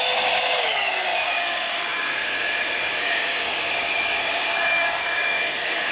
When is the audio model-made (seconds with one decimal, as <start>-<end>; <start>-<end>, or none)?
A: 0.0-5.9